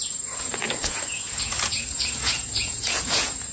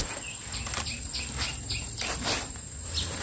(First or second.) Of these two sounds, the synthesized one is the first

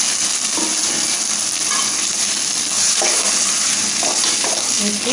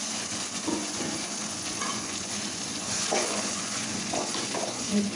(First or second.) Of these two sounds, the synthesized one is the second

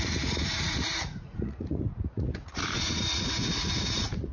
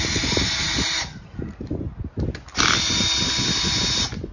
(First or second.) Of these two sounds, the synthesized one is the first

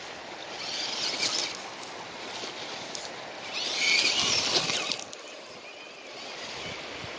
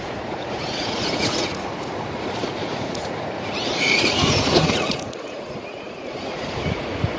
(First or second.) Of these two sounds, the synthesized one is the second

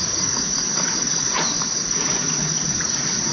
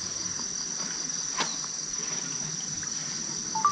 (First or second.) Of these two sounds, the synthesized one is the first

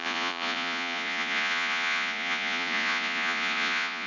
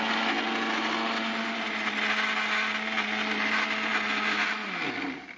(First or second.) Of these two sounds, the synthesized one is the first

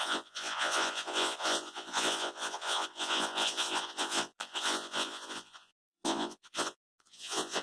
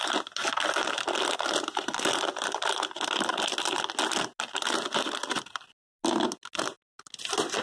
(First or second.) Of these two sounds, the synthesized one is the first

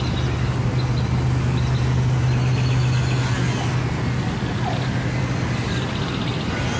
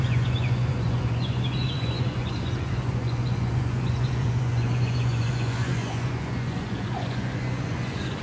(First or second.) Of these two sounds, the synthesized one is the second